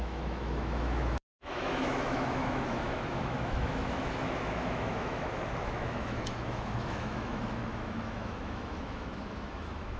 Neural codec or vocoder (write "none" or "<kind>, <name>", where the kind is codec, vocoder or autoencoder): autoencoder, DAC-VAE